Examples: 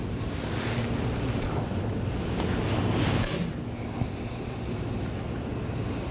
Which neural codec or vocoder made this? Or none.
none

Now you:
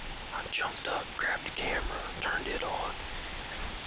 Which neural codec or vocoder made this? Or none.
none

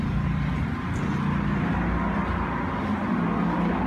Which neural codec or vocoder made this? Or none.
none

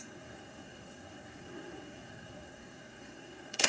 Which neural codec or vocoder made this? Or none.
codec, SNAC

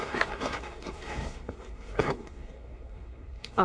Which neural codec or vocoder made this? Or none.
codec, SNAC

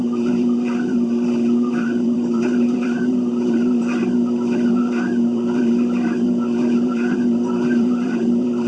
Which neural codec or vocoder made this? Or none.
vocoder, BigVGAN v2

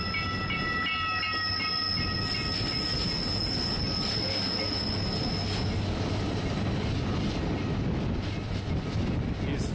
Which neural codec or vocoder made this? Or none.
none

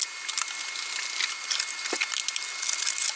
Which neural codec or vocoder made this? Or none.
none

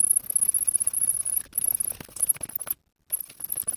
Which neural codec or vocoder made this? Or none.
none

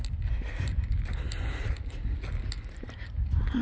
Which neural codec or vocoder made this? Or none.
none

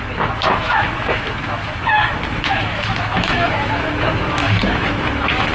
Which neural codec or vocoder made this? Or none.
autoencoder, DAC-VAE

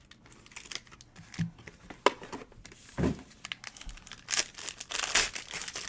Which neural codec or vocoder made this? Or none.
none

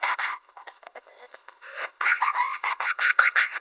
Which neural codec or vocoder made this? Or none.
codec, ZipCodec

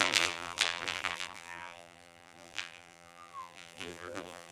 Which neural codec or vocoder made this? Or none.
vocoder, BigVGAN v2